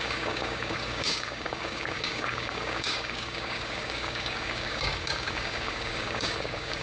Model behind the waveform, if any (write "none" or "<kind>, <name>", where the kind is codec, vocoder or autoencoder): codec, DAC